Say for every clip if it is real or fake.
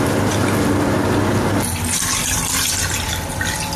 real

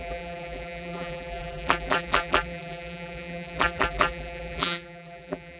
fake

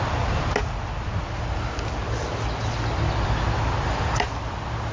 real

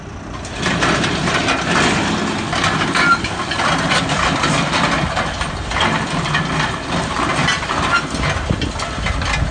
real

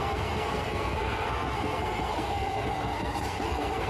fake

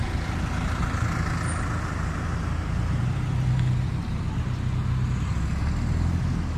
real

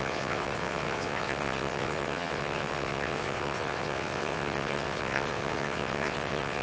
fake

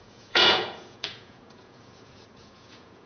fake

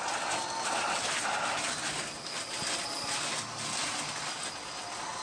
real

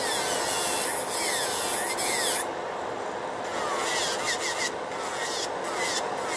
real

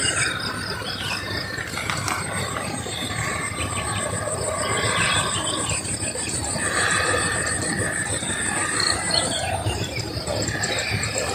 fake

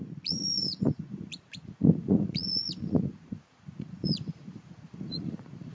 fake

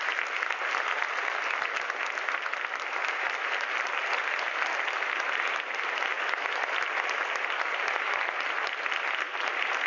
real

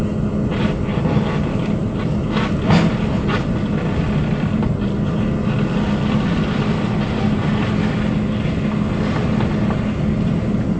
real